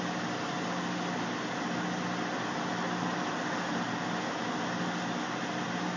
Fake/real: real